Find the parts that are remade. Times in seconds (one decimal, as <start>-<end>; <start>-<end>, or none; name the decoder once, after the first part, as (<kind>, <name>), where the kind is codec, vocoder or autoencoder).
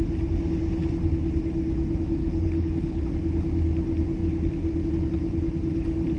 2.2-3.0 (codec, HILCodec)